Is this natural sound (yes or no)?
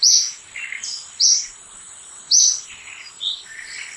yes